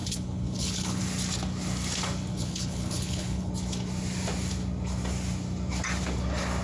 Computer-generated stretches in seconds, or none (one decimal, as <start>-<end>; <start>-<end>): 0.0-1.0; 2.3-3.5